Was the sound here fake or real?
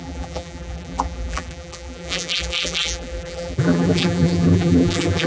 fake